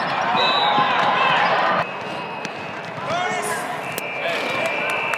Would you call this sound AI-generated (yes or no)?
no